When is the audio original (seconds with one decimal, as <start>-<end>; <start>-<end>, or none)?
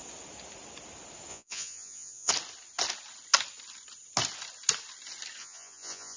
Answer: 0.0-1.3; 2.3-5.4